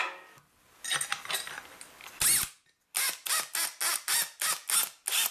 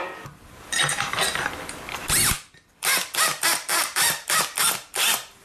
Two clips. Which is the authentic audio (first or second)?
first